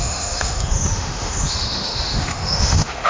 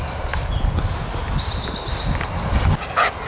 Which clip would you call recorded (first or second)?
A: second